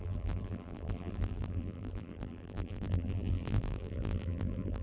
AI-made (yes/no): yes